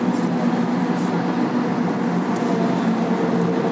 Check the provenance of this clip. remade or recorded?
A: recorded